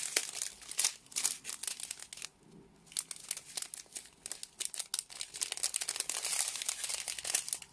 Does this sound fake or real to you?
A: real